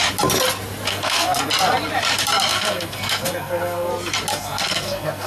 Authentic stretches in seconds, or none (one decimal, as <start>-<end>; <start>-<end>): 0.0-0.9; 1.5-2.5; 3.9-4.3